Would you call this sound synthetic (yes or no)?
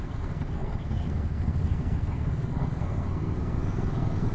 yes